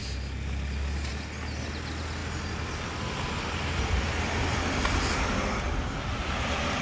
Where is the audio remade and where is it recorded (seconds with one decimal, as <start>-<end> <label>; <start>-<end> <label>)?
0.0-6.8 recorded

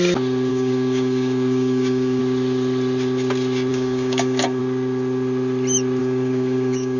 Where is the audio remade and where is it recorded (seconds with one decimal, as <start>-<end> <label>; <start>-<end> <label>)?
0.0-0.5 recorded; 0.5-2.2 remade; 2.2-3.7 recorded; 3.7-4.6 remade; 4.6-6.0 recorded; 6.0-7.0 remade

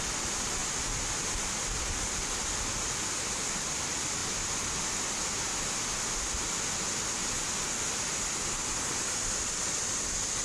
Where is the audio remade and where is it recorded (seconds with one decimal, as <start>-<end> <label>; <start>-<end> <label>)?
0.0-10.4 recorded

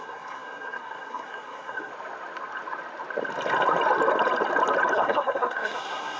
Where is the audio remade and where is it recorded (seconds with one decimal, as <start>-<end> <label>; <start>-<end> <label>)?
0.0-1.9 remade; 1.9-4.9 recorded; 4.9-6.2 remade